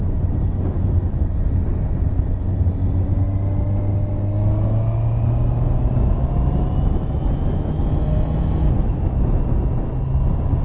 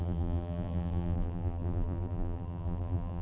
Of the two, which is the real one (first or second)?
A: first